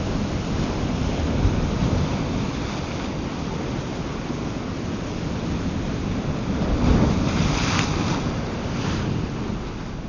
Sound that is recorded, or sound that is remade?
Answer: recorded